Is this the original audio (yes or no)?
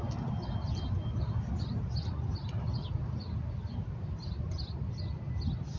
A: yes